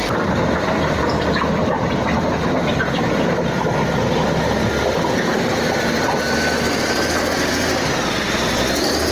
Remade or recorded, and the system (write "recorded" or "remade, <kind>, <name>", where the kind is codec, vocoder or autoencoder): remade, vocoder, BigVGAN v2